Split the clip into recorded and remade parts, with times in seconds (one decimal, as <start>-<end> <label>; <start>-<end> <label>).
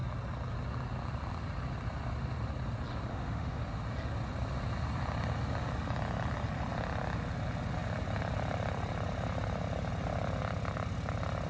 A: 0.0-3.1 recorded; 3.1-3.6 remade; 3.6-11.5 recorded